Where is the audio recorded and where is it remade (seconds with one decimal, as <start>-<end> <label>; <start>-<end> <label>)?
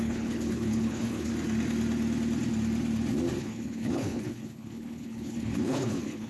0.0-1.3 remade; 1.3-3.4 recorded; 3.4-6.3 remade